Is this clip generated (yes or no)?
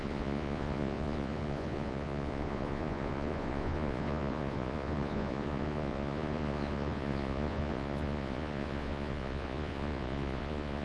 yes